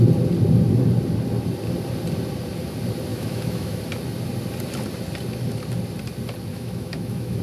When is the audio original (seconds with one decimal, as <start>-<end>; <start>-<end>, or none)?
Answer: 0.0-3.1; 3.8-6.5